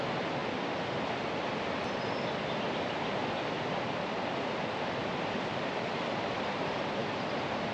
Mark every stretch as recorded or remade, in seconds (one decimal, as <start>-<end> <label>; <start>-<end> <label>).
0.0-5.0 recorded; 5.0-6.6 remade; 6.6-7.7 recorded